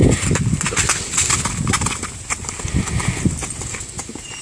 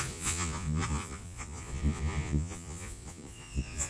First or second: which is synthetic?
second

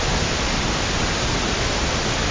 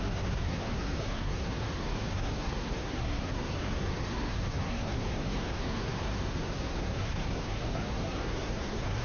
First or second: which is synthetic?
second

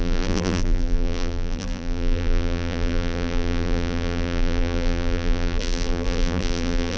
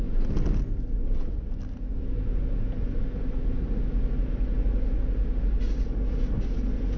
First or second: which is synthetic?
first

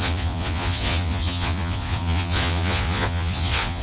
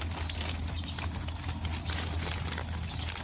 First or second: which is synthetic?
first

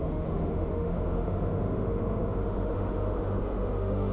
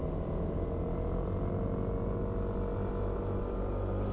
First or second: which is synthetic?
first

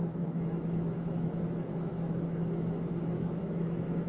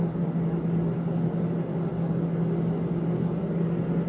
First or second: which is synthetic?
first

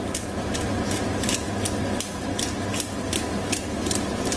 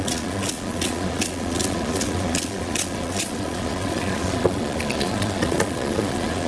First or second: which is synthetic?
second